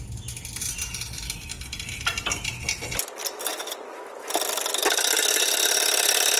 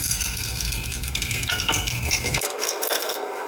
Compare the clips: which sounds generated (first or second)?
second